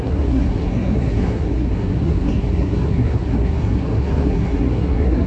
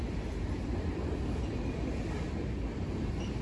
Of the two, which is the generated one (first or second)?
first